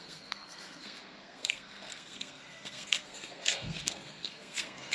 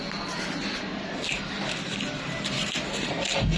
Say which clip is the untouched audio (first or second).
second